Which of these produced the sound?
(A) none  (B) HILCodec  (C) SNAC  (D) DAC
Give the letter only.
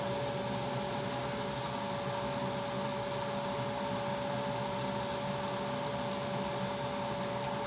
A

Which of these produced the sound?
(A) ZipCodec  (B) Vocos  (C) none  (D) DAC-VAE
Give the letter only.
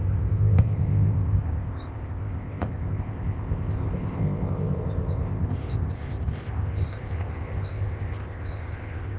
A